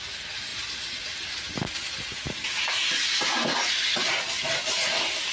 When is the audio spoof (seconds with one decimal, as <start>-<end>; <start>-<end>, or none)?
none